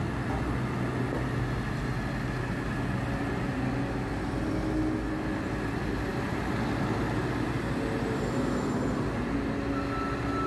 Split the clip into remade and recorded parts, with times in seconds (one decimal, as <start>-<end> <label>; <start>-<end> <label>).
0.0-10.5 recorded

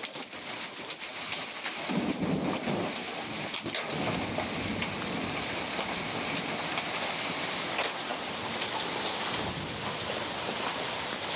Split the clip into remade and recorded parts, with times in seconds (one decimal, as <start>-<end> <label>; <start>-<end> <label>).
0.0-11.4 recorded